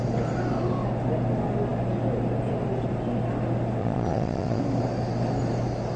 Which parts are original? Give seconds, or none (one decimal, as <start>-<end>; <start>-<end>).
0.0-3.8; 4.6-6.0